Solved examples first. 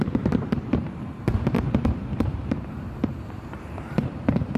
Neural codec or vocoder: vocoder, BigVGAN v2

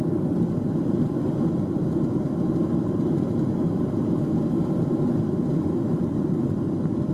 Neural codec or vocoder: vocoder, BigVGAN v2